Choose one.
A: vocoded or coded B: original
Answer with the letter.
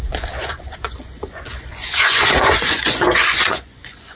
A